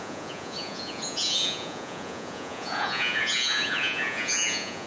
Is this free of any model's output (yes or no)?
no